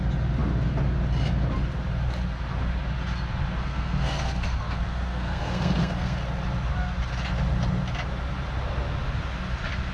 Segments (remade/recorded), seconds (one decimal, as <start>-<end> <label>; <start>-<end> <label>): 0.0-3.6 recorded; 3.6-6.2 remade; 6.2-9.9 recorded